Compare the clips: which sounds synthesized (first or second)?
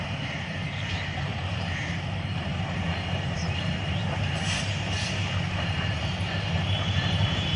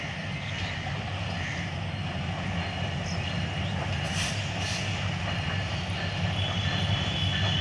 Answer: first